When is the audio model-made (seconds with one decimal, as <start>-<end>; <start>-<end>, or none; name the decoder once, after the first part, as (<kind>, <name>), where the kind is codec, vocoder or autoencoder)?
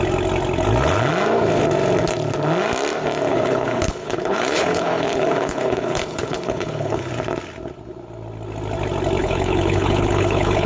3.3-7.1 (codec, HILCodec); 9.2-10.7